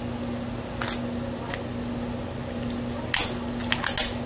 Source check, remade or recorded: recorded